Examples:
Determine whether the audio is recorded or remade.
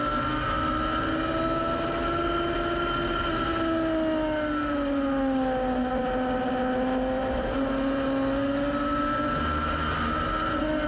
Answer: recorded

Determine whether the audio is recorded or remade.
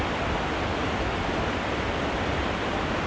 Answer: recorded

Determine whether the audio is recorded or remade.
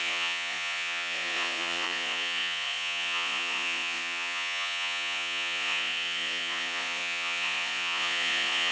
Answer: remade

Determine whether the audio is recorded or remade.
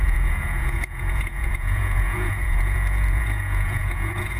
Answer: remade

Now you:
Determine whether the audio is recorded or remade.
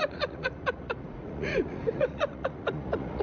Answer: remade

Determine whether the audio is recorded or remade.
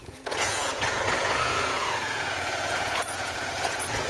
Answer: remade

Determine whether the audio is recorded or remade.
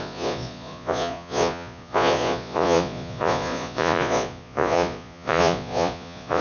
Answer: remade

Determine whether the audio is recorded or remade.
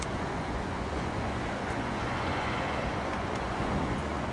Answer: remade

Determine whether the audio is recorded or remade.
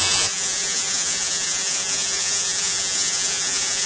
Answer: remade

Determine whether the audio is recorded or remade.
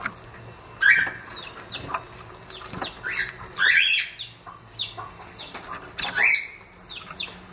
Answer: recorded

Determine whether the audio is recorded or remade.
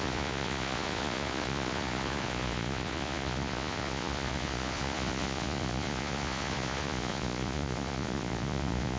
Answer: remade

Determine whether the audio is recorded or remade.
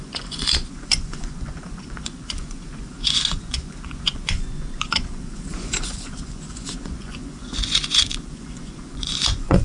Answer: remade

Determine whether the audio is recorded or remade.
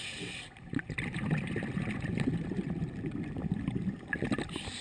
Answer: recorded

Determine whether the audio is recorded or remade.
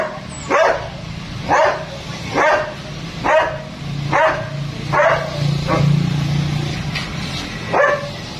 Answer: recorded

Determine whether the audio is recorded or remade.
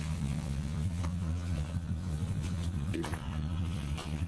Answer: remade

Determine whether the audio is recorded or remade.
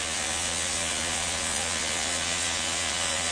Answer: remade